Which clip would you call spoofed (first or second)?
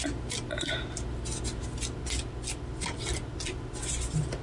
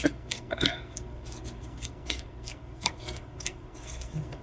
second